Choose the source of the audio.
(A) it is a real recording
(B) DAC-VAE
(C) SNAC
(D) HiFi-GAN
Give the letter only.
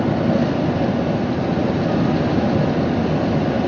A